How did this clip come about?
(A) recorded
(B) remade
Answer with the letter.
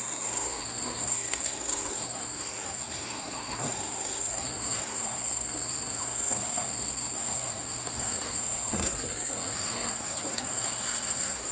B